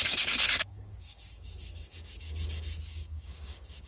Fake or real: fake